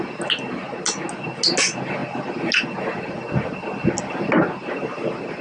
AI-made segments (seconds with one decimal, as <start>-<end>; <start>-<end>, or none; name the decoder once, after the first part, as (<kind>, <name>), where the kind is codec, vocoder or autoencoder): none